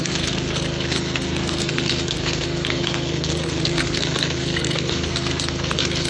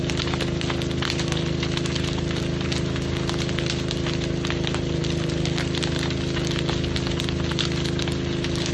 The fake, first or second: first